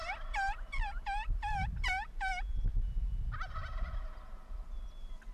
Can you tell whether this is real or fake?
real